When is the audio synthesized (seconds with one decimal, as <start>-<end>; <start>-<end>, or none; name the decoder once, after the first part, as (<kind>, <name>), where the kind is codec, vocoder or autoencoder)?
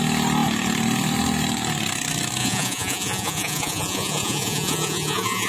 2.4-5.5 (vocoder, Vocos)